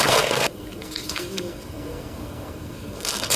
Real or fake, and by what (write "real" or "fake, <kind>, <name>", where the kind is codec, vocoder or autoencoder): fake, codec, SNAC